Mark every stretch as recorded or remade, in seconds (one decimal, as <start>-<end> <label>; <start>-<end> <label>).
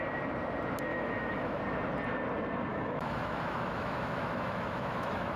0.0-0.9 recorded; 0.9-1.6 remade; 1.6-2.7 recorded; 2.7-5.4 remade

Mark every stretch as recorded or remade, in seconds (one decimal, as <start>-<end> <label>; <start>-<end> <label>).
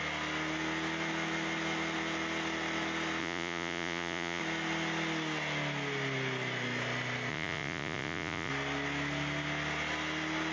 0.0-3.2 recorded; 3.2-4.4 remade; 4.4-7.3 recorded; 7.3-8.5 remade; 8.5-10.5 recorded